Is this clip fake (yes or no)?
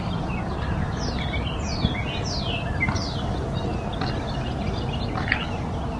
no